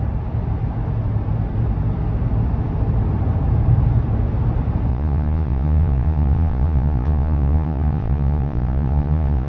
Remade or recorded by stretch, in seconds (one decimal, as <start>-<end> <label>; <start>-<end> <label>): 0.0-4.9 recorded; 4.9-9.5 remade